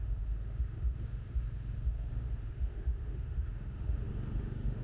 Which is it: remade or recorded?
remade